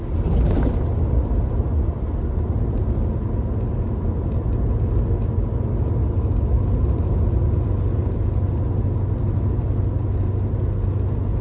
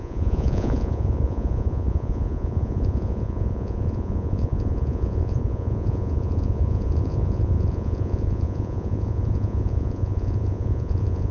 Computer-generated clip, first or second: second